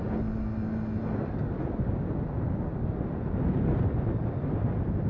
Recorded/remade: recorded